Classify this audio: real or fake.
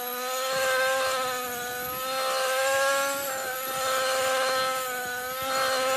real